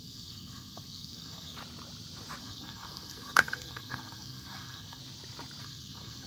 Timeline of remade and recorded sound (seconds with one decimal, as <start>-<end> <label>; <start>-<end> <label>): 0.0-1.6 remade; 1.6-2.4 recorded; 2.4-5.0 remade; 5.0-5.6 recorded; 5.6-6.3 remade